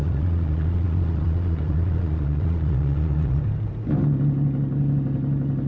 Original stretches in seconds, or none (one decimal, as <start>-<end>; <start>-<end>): 3.4-5.7